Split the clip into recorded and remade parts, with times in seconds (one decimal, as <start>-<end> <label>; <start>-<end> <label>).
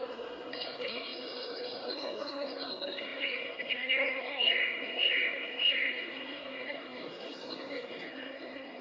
0.0-8.8 remade